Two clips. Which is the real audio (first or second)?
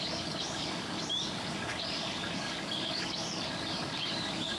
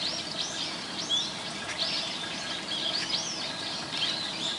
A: second